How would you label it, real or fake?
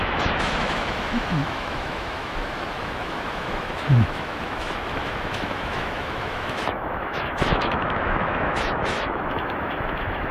fake